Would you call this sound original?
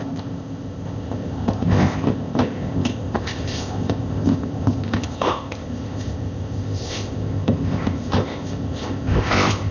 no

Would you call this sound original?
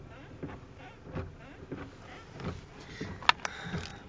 yes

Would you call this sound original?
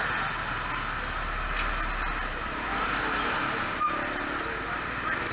yes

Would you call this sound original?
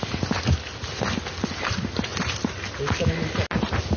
yes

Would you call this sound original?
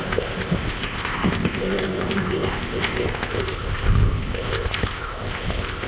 no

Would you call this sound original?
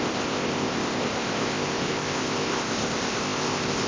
no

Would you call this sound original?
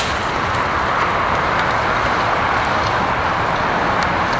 yes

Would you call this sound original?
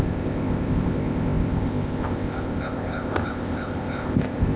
no